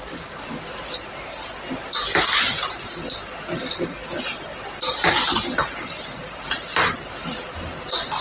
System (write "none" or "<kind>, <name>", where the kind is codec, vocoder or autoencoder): vocoder, BigVGAN v2